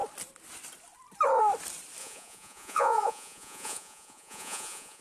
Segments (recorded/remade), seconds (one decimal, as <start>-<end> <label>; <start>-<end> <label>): 0.0-2.0 recorded; 2.0-5.0 remade